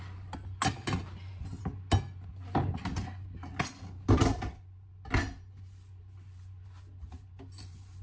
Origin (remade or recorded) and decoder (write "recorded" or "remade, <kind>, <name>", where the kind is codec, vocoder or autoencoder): recorded